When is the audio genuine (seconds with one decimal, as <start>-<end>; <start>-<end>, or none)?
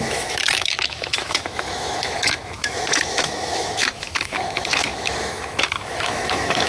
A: none